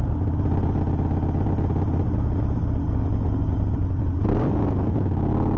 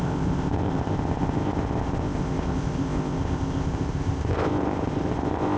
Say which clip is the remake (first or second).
second